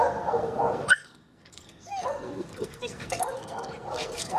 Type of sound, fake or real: fake